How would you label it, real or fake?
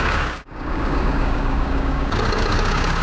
fake